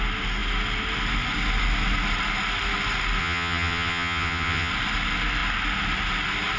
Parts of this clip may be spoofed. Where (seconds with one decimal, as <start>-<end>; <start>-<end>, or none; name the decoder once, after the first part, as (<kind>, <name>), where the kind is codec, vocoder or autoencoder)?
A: 3.2-4.7 (vocoder, HiFi-GAN)